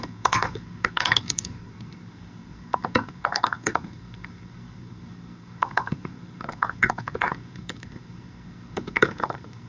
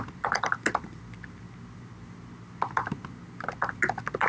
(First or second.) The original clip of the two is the second